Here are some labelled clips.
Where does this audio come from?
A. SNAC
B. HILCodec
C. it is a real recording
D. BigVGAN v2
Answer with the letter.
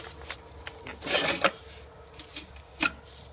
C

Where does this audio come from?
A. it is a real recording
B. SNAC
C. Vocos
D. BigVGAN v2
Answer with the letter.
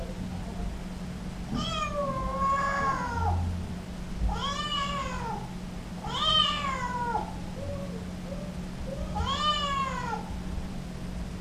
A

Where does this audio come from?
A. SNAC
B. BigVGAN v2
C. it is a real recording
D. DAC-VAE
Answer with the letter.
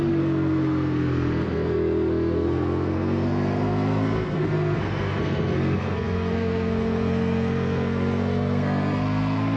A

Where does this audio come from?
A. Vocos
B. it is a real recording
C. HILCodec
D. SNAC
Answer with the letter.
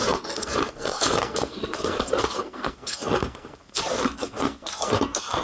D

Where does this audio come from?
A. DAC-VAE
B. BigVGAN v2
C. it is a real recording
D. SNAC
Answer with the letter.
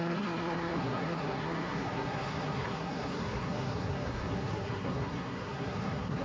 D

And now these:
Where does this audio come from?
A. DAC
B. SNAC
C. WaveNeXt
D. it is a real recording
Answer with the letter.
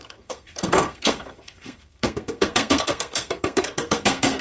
B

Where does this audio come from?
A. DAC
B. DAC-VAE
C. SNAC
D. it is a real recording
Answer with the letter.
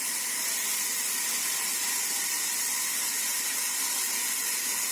D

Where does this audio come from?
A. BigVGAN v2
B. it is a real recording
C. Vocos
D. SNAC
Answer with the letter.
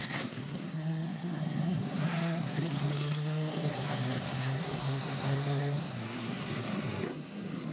D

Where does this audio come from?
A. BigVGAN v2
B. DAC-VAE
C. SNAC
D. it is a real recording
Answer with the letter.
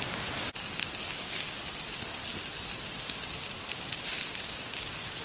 D